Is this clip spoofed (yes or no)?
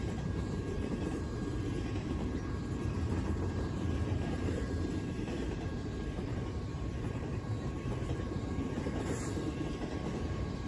yes